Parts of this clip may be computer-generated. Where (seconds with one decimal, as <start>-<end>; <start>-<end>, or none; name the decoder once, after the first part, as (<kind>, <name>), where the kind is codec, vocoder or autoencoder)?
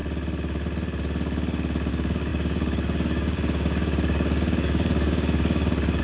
1.9-6.0 (codec, DAC)